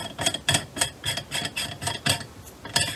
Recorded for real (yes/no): yes